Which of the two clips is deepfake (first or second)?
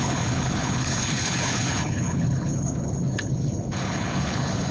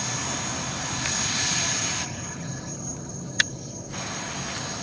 first